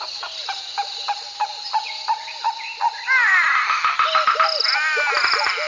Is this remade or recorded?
recorded